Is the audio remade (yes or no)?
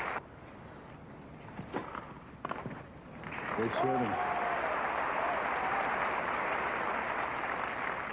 no